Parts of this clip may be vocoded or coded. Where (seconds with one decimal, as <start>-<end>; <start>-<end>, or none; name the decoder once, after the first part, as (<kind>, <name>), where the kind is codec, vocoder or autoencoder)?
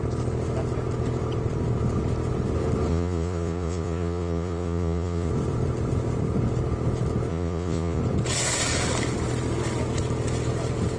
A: 2.9-5.3 (vocoder, Vocos); 7.3-8.0